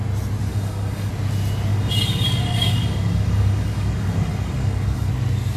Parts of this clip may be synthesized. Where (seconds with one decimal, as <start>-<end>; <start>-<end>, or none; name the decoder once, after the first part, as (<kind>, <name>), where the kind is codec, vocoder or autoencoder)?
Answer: 0.5-1.1 (codec, DAC); 1.7-5.1

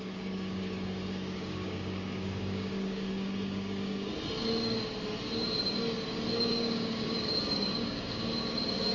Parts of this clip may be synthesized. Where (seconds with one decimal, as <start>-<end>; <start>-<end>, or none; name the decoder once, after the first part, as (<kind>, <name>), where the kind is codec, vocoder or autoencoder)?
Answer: 0.0-4.1 (codec, DAC); 6.3-8.9

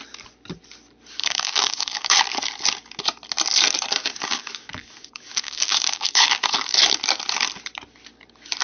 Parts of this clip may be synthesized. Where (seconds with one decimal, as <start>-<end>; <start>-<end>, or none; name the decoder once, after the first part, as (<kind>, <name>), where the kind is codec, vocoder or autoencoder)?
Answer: 1.2-2.2 (codec, DAC); 4.0-6.9

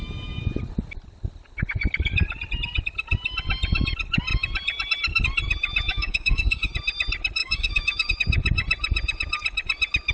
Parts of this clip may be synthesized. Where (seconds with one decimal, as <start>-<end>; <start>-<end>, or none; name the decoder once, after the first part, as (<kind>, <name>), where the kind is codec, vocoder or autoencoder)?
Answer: 5.9-6.7 (codec, DAC); 7.4-8.1